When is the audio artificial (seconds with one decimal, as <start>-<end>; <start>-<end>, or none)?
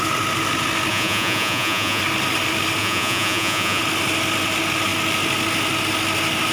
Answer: 0.9-2.0; 2.8-3.8